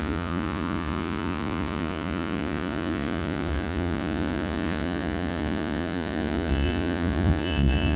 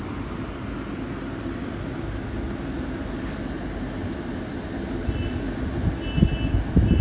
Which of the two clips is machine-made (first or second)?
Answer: first